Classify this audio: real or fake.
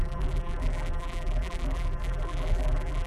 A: fake